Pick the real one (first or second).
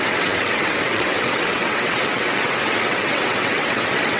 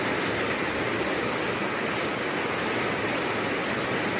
second